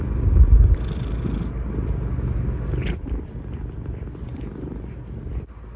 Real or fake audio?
real